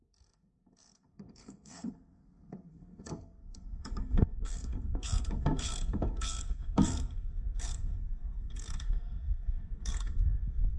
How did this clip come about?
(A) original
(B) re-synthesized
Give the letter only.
B